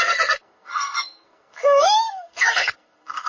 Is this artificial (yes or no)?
yes